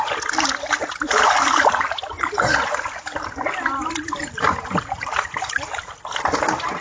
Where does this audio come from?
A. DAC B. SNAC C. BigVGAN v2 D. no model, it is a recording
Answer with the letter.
D